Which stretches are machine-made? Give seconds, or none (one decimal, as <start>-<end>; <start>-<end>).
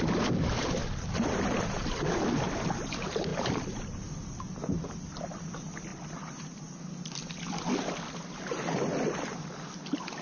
none